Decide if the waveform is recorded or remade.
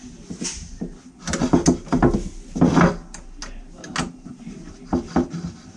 recorded